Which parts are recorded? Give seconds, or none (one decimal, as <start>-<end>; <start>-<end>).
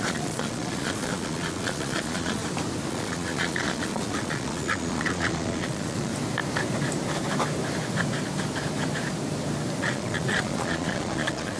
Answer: 2.4-2.9; 6.1-9.8